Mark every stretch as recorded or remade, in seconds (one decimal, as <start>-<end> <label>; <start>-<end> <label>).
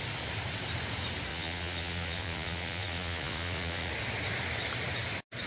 0.0-1.3 recorded; 1.3-3.9 remade; 3.9-5.5 recorded